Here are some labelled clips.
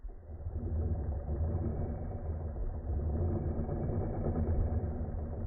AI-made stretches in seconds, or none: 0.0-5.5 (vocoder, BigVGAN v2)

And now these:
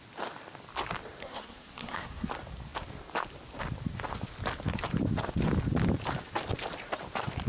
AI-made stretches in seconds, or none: 1.2-2.3 (codec, SNAC)

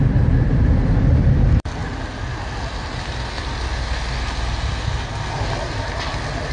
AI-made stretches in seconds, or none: none